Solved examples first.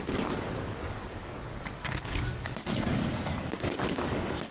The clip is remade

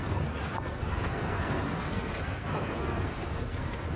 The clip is remade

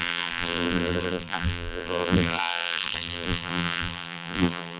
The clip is remade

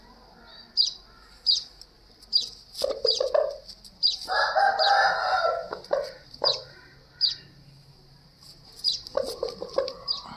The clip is recorded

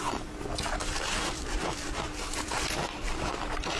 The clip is remade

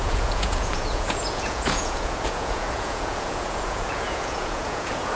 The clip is remade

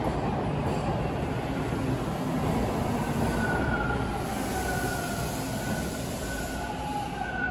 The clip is recorded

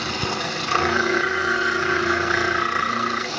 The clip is remade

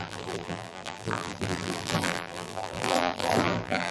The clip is remade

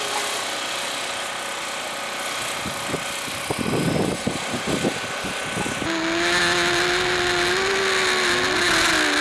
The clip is recorded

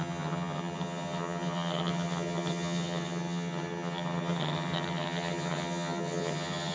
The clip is remade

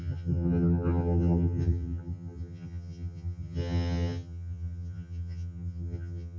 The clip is remade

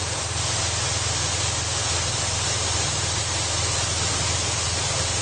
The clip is recorded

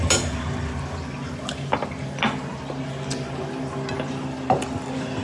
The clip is recorded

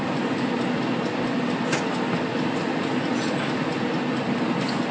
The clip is recorded